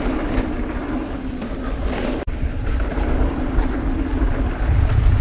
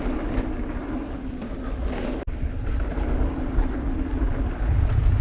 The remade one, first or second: first